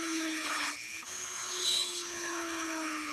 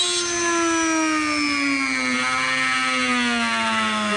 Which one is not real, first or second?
first